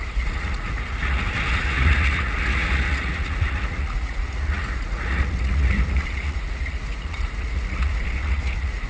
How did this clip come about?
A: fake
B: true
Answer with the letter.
A